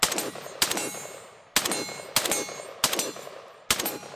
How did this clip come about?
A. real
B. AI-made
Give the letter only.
A